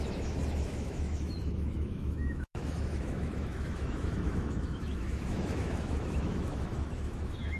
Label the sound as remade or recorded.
remade